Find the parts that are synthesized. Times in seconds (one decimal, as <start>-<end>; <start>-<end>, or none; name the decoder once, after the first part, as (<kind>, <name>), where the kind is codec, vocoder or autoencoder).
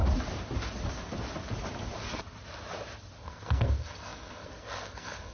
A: 3.2-5.3 (codec, SNAC)